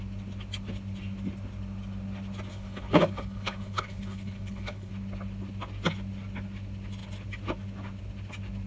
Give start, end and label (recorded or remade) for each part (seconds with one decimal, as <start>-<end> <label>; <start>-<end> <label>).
0.0-2.5 recorded; 2.5-4.9 remade; 4.9-8.7 recorded